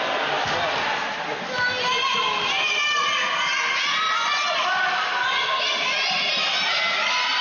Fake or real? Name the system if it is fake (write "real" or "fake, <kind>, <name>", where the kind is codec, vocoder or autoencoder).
real